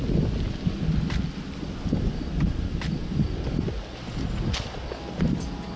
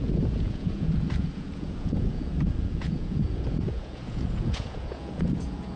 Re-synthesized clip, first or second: second